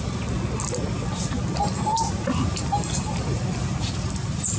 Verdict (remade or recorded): recorded